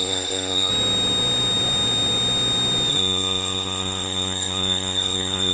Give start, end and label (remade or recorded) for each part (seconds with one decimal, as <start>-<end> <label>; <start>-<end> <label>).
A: 0.0-0.7 remade; 0.7-2.9 recorded; 2.9-5.5 remade